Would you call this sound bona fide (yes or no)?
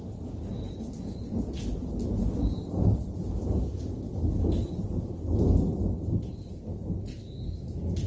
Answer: yes